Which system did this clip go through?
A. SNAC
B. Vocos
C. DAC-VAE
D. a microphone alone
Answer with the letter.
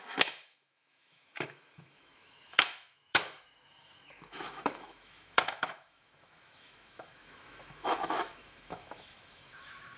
C